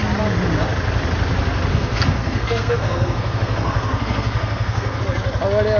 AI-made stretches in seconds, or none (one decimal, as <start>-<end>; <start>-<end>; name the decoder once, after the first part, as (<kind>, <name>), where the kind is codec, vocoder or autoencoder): 1.7-5.0 (codec, SNAC)